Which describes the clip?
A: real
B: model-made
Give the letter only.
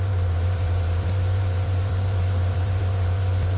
B